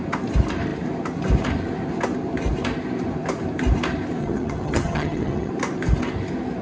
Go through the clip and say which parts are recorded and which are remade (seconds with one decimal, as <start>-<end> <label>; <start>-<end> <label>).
0.0-4.2 recorded; 4.2-5.5 remade; 5.5-6.6 recorded